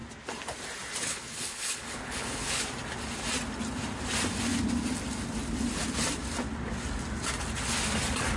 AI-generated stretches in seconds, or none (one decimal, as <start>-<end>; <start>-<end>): 1.1-2.6